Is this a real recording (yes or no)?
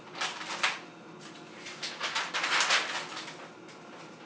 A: yes